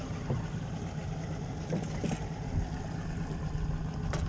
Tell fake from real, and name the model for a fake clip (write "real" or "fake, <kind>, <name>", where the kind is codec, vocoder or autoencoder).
real